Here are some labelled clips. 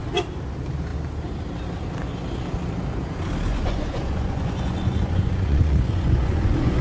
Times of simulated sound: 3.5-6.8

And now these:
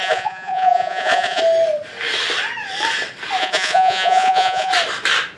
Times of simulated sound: 0.0-1.4; 3.4-4.7

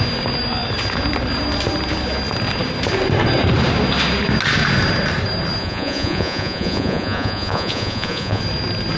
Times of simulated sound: 5.6-8.4

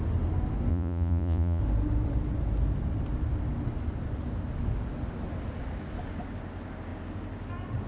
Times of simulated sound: 0.7-1.6

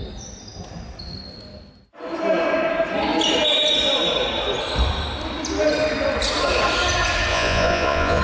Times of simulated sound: 7.3-8.2

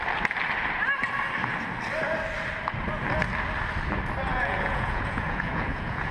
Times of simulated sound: 4.3-6.1